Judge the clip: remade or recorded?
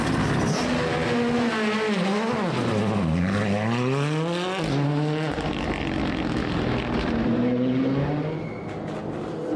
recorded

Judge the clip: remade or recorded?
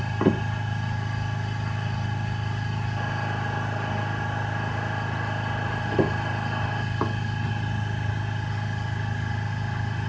recorded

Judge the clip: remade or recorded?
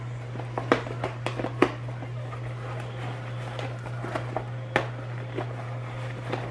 recorded